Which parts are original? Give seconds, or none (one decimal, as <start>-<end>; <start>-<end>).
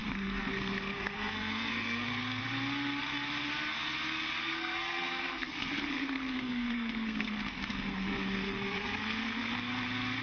2.4-4.4; 9.5-10.2